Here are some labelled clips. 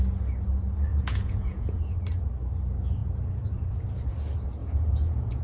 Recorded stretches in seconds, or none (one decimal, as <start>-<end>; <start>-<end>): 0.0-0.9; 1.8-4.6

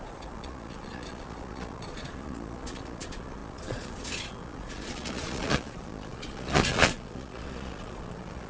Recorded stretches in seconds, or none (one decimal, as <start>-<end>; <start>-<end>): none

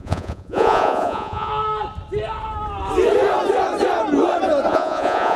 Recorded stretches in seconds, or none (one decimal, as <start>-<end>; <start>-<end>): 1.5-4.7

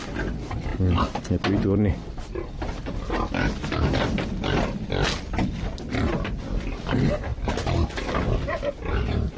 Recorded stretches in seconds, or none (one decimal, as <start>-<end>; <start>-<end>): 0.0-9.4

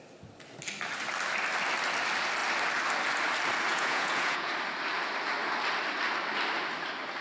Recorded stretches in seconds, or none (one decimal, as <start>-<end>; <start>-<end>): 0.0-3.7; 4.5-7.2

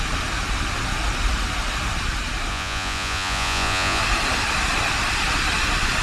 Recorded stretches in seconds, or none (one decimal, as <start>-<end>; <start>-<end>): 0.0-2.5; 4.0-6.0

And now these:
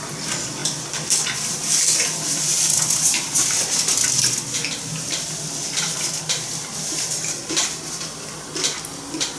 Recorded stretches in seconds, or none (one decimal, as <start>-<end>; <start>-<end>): 0.0-9.4

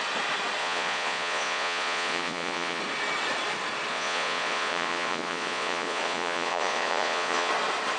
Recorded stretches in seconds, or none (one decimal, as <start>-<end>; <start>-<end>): 0.0-0.6; 2.8-3.9; 7.5-8.0